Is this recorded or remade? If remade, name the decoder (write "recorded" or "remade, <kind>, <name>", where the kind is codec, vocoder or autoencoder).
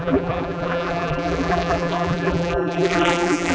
remade, vocoder, BigVGAN v2